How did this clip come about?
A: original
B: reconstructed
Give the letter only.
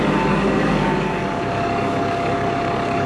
B